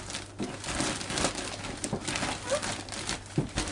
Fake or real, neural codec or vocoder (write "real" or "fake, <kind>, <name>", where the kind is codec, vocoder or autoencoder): real